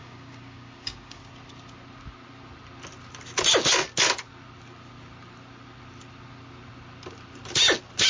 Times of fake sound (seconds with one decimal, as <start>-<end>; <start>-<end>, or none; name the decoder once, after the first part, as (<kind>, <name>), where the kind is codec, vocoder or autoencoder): 0.0-1.3 (codec, DAC)